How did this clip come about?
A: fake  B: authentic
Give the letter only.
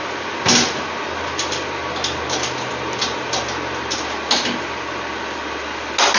B